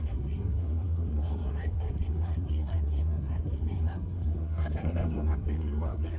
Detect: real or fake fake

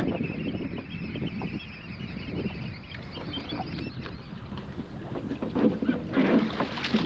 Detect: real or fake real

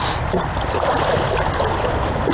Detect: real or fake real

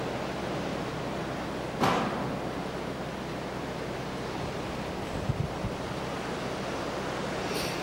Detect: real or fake real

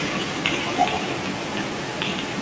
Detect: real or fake real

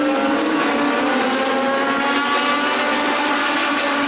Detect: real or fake real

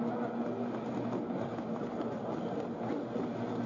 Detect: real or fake real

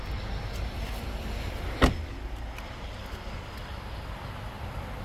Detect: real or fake real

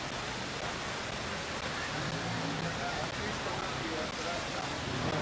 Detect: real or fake real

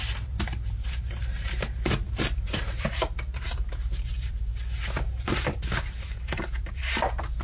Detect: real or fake fake